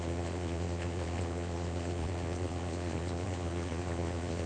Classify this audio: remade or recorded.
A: remade